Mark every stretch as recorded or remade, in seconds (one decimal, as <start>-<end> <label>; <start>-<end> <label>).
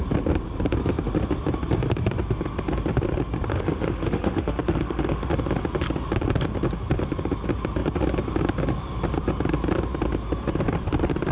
0.0-3.5 recorded; 3.5-5.3 remade; 5.3-11.3 recorded